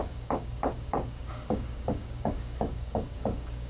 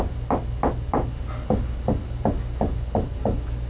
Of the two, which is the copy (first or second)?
first